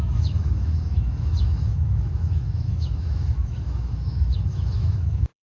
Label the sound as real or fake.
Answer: fake